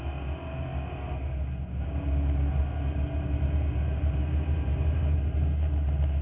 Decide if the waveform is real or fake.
real